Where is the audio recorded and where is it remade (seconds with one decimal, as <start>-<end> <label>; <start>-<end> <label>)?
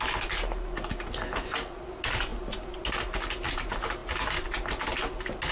0.0-5.5 recorded